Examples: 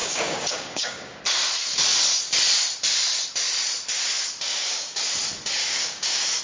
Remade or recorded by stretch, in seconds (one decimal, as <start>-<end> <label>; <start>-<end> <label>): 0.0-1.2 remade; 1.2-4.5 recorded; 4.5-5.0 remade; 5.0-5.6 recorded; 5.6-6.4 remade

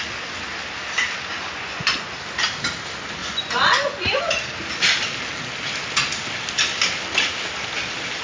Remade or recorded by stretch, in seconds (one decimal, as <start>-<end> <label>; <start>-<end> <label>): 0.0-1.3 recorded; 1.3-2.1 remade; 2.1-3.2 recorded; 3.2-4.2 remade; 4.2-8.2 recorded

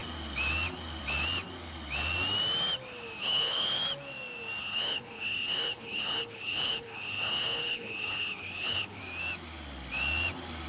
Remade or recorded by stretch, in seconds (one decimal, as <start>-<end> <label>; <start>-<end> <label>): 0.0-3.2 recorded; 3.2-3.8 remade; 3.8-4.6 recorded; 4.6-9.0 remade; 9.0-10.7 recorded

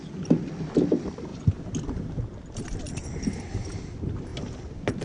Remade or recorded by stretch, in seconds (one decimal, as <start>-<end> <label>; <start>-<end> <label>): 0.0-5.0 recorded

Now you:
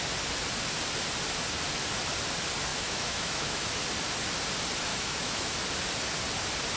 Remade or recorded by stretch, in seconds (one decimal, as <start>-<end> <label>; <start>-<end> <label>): 0.0-2.7 recorded; 2.7-3.7 remade; 3.7-4.9 recorded; 4.9-5.5 remade; 5.5-6.8 recorded

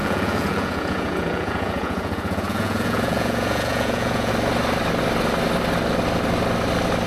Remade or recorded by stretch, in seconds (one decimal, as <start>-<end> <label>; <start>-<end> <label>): 0.0-4.3 remade; 4.3-7.1 recorded

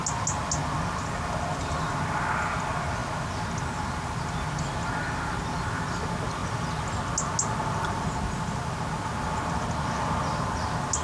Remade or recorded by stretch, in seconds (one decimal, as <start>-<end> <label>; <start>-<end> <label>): 0.0-11.0 recorded